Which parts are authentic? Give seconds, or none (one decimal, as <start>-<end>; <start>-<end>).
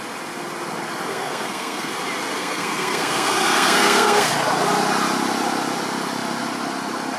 0.0-1.1; 1.9-2.4; 4.3-7.2